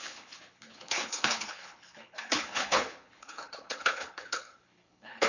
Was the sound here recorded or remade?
remade